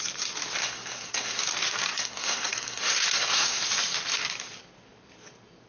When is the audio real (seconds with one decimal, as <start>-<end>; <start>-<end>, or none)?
0.0-0.6; 1.4-1.9; 3.6-5.7

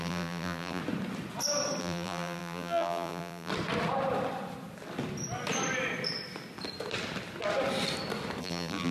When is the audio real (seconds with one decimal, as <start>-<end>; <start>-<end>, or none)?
0.8-1.8; 3.5-8.4

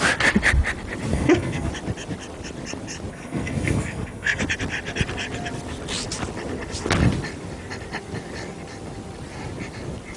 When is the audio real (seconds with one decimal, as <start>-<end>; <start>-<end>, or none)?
0.0-1.1; 1.7-3.1; 4.4-10.2

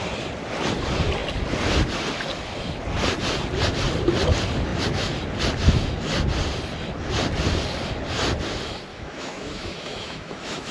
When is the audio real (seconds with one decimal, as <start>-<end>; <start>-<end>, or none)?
0.0-8.9

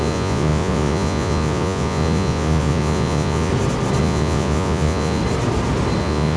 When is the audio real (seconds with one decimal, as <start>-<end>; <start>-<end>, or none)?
3.5-4.0; 5.2-6.0

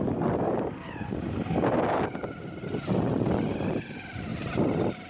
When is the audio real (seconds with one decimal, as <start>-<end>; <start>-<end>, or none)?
0.0-5.1

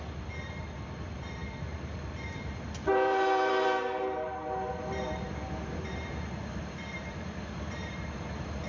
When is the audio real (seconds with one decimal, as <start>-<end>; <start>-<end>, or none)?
none